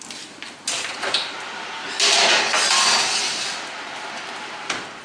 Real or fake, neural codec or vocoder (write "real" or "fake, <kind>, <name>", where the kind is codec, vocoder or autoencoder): real